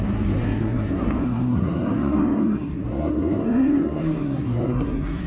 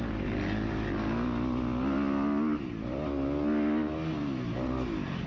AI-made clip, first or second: first